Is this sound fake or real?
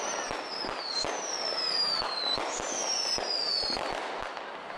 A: real